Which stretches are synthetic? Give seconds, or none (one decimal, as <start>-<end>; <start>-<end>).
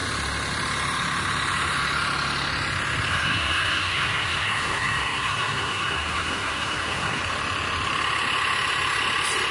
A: 3.1-7.2